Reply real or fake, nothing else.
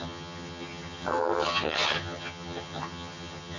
fake